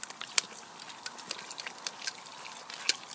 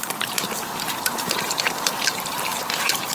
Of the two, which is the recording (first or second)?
first